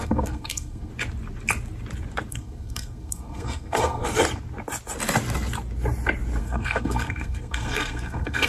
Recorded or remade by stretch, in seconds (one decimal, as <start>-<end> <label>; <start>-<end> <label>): 0.0-0.9 remade; 0.9-2.3 recorded; 2.3-4.0 remade; 4.0-6.4 recorded; 6.4-8.5 remade